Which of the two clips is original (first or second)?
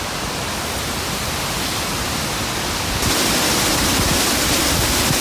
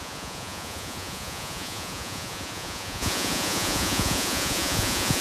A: first